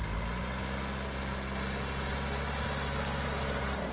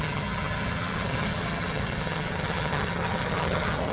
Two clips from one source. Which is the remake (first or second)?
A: second